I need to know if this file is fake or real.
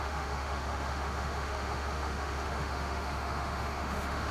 fake